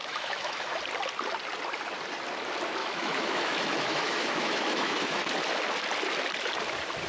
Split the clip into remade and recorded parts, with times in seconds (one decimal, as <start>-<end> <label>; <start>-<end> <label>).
0.0-0.8 remade; 0.8-2.8 recorded; 2.8-5.2 remade; 5.2-7.1 recorded